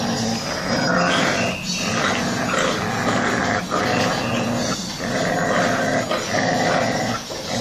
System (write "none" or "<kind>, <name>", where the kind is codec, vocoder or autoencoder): none